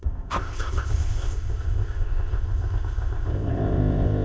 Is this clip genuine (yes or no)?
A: no